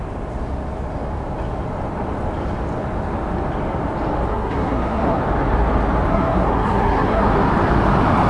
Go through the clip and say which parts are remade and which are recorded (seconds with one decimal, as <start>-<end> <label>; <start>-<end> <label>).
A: 0.0-4.3 recorded; 4.3-5.2 remade; 5.2-6.1 recorded; 6.1-7.3 remade; 7.3-8.3 recorded